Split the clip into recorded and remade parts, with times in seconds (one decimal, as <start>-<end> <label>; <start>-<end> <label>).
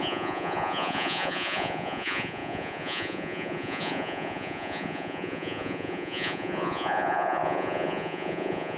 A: 0.0-8.8 remade